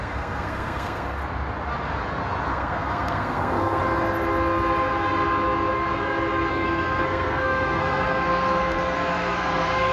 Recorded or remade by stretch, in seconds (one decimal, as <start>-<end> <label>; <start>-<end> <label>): 0.0-1.2 remade; 1.2-2.5 recorded; 2.5-3.8 remade; 3.8-6.5 recorded; 6.5-9.9 remade